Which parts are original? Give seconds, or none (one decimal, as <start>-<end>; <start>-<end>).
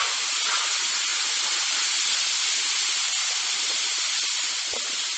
0.0-1.1; 2.0-3.0; 4.5-5.2